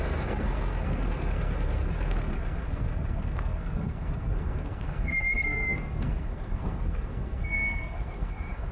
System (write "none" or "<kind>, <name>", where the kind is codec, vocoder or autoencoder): codec, SNAC